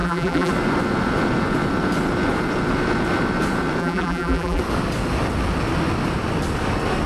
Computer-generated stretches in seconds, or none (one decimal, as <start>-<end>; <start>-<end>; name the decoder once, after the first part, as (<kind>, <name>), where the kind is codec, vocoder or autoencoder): 0.0-0.5 (vocoder, BigVGAN v2); 3.8-4.6